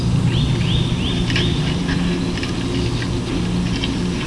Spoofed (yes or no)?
no